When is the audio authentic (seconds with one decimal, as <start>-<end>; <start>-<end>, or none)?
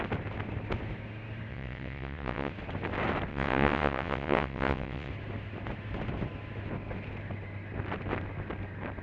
0.0-1.5; 2.5-3.3; 5.1-9.0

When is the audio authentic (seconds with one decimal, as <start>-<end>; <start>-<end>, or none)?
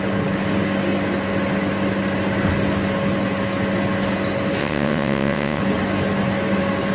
0.0-4.6; 5.6-6.9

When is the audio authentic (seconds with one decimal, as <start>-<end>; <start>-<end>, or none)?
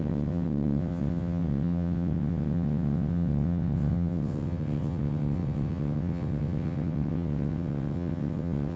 none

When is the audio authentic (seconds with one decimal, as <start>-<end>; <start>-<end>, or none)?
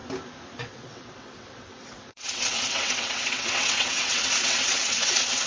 0.0-0.6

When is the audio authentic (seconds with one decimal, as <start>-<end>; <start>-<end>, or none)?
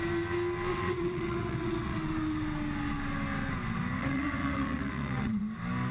0.0-0.7; 2.1-4.0; 5.4-5.9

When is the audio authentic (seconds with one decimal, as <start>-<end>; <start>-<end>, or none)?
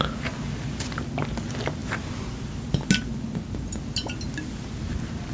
0.0-5.3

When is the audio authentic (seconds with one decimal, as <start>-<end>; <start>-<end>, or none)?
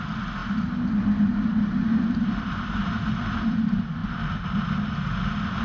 0.0-5.6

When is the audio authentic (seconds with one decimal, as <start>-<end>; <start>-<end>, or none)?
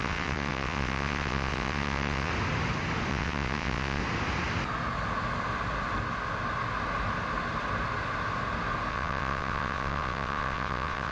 2.3-3.1; 4.0-8.9